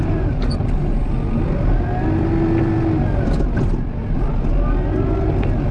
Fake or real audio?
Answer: real